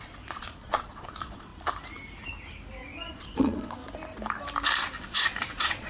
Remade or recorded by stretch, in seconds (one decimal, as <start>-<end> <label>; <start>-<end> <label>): 0.0-1.5 remade; 1.5-3.1 recorded; 3.1-3.8 remade; 3.8-5.0 recorded; 5.0-5.9 remade